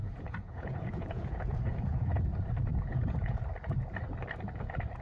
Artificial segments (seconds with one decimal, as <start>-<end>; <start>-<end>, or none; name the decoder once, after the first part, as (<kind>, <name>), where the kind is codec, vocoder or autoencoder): 0.0-2.2 (vocoder, Vocos); 2.7-3.4